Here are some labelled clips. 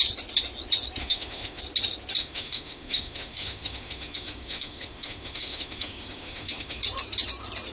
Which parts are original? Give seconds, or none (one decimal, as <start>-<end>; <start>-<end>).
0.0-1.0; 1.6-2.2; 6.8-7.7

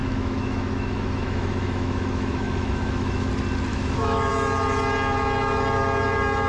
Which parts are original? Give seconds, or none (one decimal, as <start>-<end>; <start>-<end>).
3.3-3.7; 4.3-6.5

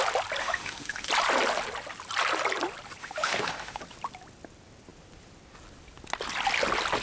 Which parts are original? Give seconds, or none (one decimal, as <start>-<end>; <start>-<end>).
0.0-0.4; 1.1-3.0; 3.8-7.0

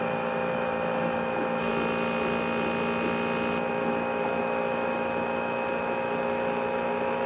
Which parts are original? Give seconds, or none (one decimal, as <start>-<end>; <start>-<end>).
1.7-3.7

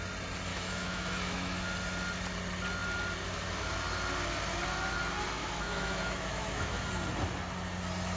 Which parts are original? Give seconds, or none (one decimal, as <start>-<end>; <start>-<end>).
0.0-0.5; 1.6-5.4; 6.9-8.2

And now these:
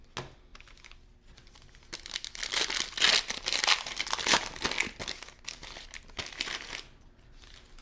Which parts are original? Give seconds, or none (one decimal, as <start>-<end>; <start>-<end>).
0.0-7.8

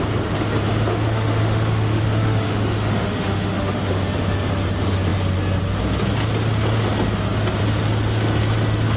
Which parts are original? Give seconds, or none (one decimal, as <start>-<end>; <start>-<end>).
0.0-0.9; 3.9-9.0